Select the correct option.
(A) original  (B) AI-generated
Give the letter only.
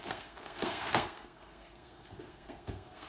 B